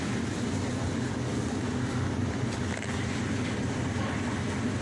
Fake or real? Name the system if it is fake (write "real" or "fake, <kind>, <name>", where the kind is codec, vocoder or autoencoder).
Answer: real